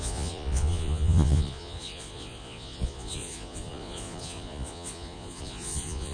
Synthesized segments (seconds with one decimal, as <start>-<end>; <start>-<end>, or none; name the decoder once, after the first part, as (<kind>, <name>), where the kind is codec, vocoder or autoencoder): 0.0-6.1 (vocoder, Vocos)